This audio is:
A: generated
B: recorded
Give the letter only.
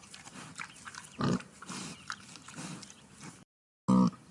B